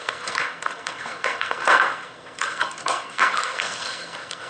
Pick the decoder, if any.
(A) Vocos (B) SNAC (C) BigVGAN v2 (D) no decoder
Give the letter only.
B